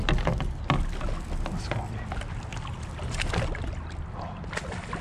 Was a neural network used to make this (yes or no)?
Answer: no